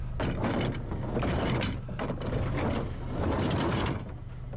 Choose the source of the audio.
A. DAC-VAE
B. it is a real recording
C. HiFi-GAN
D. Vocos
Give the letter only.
B